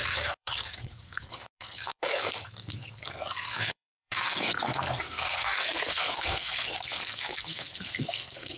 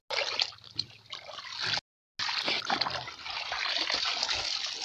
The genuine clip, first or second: second